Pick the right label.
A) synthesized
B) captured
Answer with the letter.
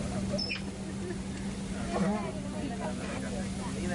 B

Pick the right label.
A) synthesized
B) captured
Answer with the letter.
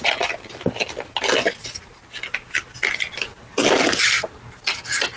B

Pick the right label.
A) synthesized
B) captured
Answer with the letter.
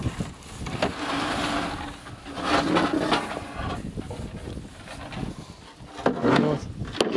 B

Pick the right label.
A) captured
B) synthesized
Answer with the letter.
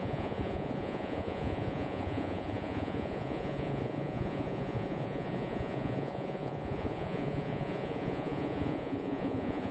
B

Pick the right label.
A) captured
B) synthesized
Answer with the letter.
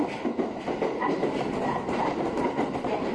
A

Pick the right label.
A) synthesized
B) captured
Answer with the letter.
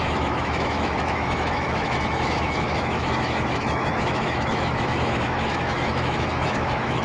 A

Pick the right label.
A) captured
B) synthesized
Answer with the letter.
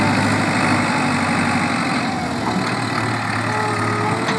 A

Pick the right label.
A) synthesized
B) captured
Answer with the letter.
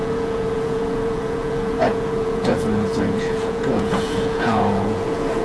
A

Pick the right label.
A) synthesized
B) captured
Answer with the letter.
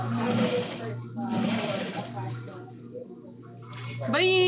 B